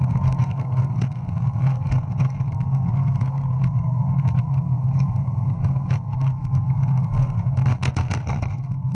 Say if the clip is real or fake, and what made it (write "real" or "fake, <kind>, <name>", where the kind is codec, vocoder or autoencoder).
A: fake, codec, SNAC